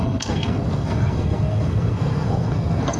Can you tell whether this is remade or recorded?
remade